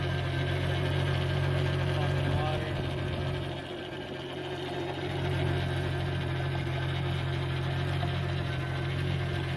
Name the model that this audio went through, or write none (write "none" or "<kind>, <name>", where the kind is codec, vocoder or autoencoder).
none